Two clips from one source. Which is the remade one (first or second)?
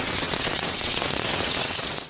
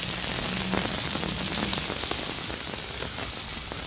first